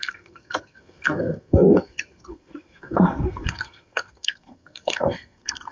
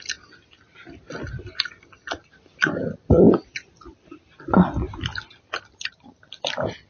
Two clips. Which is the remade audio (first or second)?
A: first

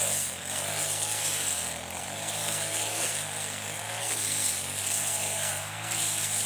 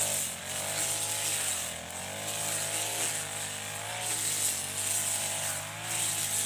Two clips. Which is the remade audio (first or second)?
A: first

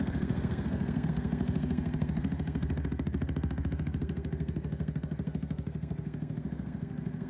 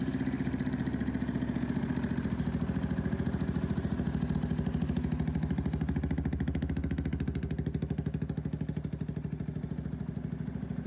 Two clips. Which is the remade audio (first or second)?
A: first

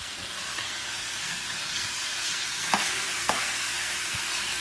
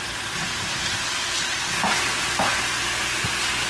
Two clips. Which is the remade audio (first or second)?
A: first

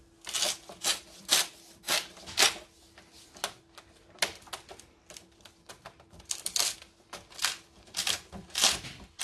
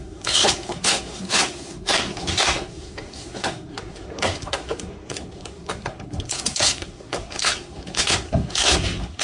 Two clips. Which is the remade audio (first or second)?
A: second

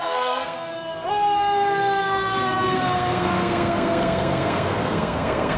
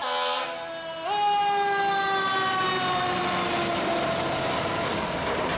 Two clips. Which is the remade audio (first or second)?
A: first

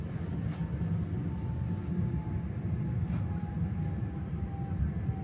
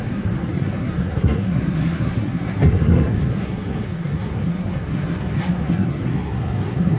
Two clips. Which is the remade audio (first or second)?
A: second